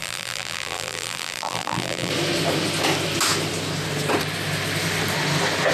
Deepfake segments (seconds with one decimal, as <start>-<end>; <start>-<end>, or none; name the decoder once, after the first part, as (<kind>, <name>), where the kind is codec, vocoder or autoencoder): 0.0-2.1 (vocoder, BigVGAN v2)